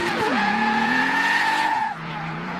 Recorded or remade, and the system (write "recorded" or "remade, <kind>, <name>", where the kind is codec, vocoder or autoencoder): remade, vocoder, Vocos